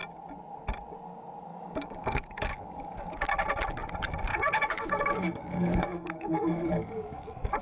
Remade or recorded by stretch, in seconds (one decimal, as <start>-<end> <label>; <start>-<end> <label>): 0.0-1.5 recorded; 1.5-3.3 remade; 3.3-4.3 recorded; 4.3-7.6 remade